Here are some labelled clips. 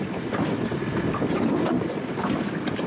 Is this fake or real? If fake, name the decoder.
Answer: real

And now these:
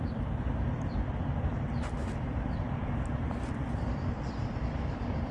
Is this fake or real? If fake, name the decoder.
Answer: real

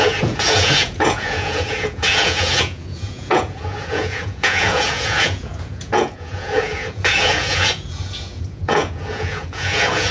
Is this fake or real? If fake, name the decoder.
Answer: fake, vocoder, Vocos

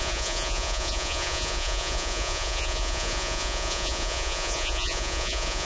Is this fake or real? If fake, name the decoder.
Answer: fake, vocoder, Vocos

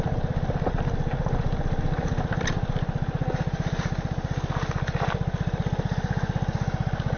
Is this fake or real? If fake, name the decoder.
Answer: real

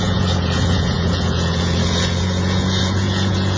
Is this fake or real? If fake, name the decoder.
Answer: fake, vocoder, Vocos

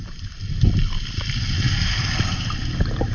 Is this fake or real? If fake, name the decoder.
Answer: real